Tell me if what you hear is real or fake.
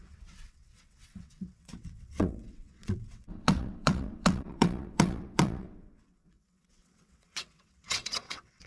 fake